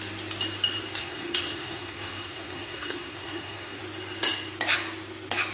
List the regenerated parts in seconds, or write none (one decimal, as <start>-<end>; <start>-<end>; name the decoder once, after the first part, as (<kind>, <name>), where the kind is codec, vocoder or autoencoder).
1.0-3.8 (codec, SNAC)